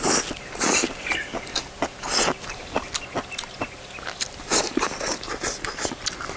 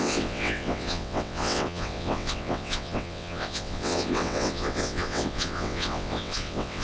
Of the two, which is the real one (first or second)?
first